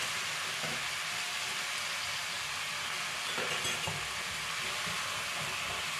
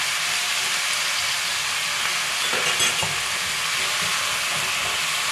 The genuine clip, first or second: second